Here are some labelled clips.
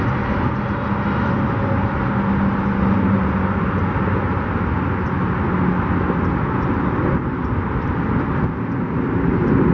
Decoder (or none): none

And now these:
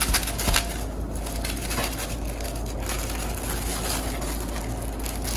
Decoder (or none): none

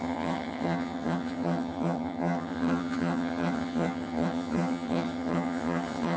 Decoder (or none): vocoder, HiFi-GAN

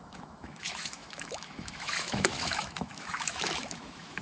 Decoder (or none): autoencoder, DAC-VAE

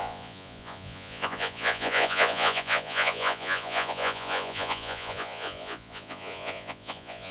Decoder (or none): vocoder, Vocos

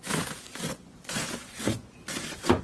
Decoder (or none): vocoder, Vocos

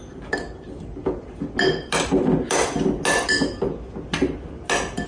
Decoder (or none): none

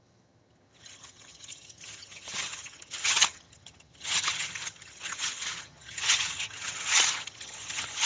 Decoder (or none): vocoder, HiFi-GAN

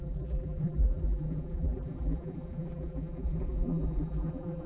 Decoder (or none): vocoder, BigVGAN v2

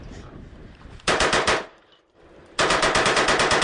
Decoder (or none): vocoder, BigVGAN v2